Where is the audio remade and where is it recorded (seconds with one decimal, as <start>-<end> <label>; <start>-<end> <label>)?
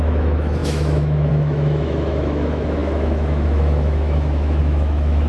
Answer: 0.0-5.3 remade